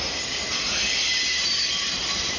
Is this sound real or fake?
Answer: real